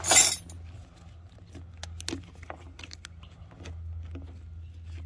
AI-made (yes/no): no